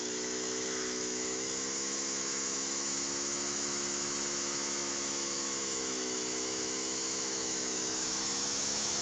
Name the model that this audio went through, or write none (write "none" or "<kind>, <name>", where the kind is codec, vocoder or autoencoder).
autoencoder, DAC-VAE